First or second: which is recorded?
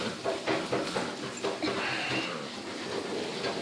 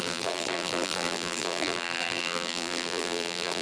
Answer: first